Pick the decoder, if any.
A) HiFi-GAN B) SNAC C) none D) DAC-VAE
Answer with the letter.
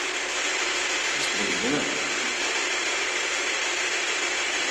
C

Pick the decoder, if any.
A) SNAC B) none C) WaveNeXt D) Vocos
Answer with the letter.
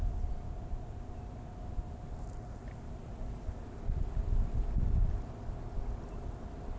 B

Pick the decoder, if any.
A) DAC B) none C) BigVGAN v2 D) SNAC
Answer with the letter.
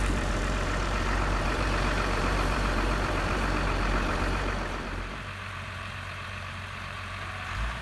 C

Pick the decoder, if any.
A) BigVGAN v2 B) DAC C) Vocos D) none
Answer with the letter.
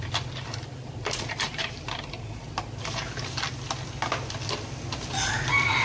D